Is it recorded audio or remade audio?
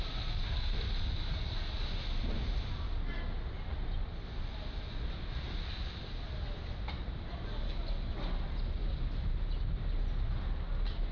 recorded